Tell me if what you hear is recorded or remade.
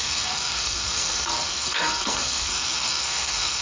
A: remade